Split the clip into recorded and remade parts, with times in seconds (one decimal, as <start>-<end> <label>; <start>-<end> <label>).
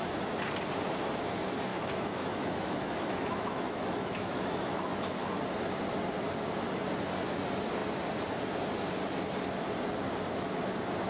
0.0-1.7 recorded; 1.7-5.4 remade; 5.4-11.1 recorded